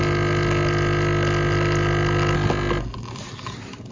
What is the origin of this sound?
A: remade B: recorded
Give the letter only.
B